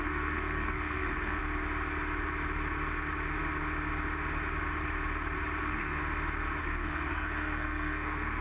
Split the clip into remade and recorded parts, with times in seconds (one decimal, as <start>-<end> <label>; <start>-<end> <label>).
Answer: 0.0-1.4 remade; 1.4-5.6 recorded; 5.6-6.0 remade; 6.0-6.6 recorded; 6.6-8.4 remade